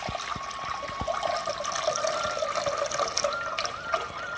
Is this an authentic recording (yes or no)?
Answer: yes